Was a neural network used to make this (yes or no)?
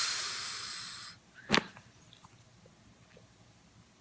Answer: no